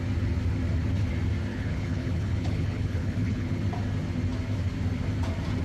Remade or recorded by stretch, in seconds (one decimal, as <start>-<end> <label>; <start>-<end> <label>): 0.0-1.5 recorded; 1.5-3.6 remade; 3.6-5.6 recorded